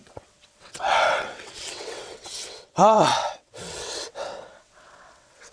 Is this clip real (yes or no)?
no